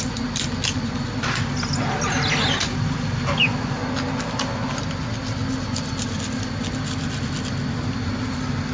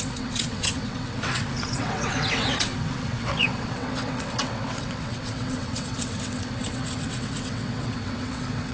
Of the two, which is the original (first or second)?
first